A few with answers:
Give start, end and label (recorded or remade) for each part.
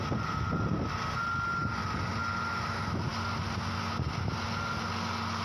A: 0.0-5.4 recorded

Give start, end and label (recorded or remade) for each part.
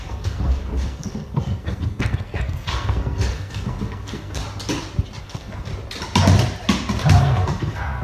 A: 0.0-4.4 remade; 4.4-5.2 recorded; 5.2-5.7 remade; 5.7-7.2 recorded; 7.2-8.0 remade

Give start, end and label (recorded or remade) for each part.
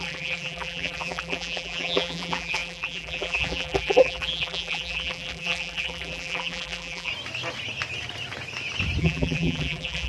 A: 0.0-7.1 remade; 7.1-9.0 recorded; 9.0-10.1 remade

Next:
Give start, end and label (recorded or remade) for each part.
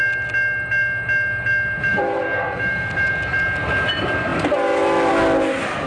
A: 0.0-1.9 recorded; 1.9-3.1 remade; 3.1-5.9 recorded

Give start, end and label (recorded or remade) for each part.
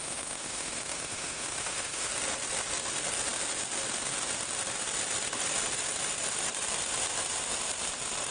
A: 0.0-2.1 remade; 2.1-8.3 recorded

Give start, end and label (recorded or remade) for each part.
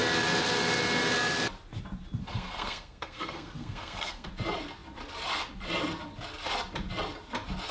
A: 0.0-2.2 recorded; 2.2-4.3 remade; 4.3-7.7 recorded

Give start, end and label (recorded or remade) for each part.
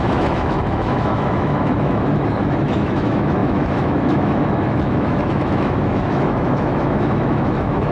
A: 0.0-7.9 remade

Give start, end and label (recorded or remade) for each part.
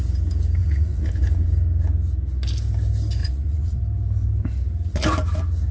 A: 0.0-0.6 recorded; 0.6-1.1 remade; 1.1-3.2 recorded; 3.2-3.8 remade; 3.8-5.7 recorded